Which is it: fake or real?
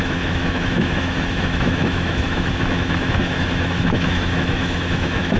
fake